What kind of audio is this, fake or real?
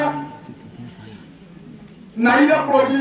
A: real